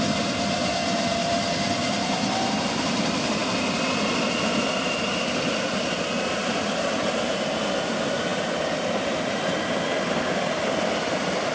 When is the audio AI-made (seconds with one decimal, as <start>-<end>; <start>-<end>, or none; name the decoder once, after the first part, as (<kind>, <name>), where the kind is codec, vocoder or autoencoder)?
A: none